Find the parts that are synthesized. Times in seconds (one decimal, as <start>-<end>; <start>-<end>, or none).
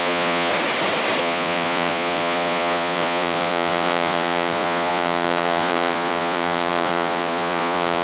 0.0-0.5; 1.2-8.0